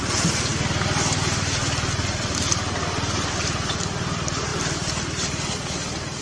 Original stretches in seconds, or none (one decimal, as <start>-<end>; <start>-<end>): 0.0-4.5